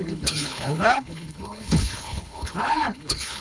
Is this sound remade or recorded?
remade